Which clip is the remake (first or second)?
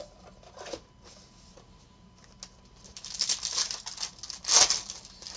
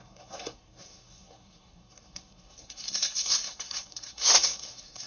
second